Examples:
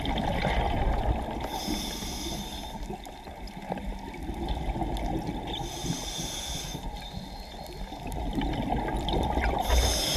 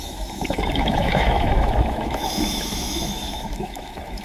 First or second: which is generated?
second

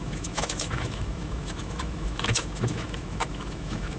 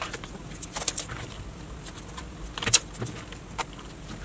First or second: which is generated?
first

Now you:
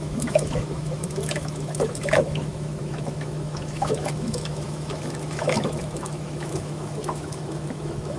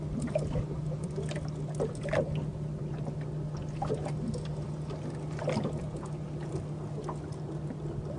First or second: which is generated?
first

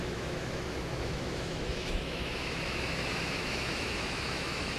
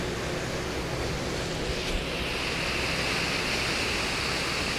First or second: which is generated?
first